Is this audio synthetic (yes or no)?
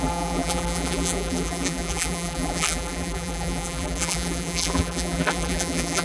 yes